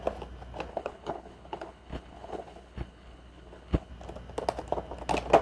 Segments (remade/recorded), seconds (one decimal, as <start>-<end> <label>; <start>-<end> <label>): 0.0-0.7 recorded; 0.7-3.9 remade; 3.9-5.4 recorded